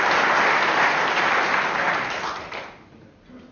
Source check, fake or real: real